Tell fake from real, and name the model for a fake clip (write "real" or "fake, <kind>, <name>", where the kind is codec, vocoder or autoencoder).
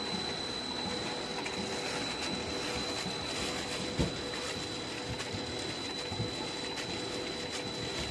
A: real